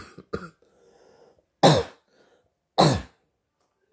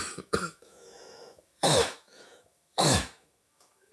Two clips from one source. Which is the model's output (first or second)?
second